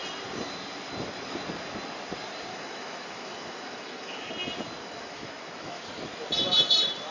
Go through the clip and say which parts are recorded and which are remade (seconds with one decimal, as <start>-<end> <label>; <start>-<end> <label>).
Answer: 0.0-2.5 recorded; 2.5-4.3 remade; 4.3-4.8 recorded; 4.8-5.8 remade; 5.8-7.1 recorded